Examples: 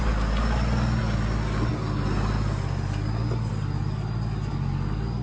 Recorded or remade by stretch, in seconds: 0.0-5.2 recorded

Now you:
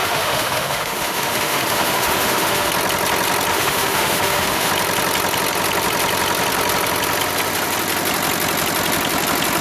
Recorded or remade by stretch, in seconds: 0.0-2.7 remade; 2.7-3.5 recorded; 3.5-4.7 remade; 4.7-9.6 recorded

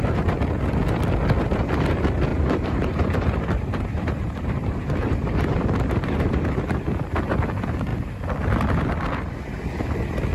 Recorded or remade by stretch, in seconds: 0.0-2.3 recorded; 2.3-6.8 remade; 6.8-10.3 recorded

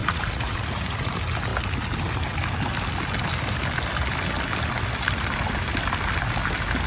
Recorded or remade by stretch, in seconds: 0.0-1.1 remade; 1.1-6.9 recorded

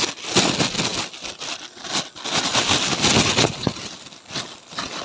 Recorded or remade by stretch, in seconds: 0.0-5.0 recorded

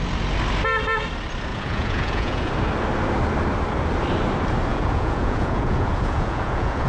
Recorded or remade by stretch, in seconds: 0.0-1.5 recorded; 1.5-2.5 remade; 2.5-4.7 recorded; 4.7-6.9 remade

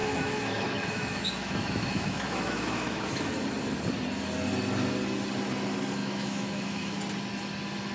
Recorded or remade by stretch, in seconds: 0.0-3.3 remade; 3.3-6.0 recorded; 6.0-7.0 remade; 7.0-7.9 recorded

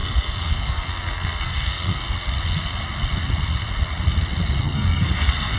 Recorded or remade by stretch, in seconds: 0.0-2.0 remade; 2.0-4.6 recorded; 4.6-5.6 remade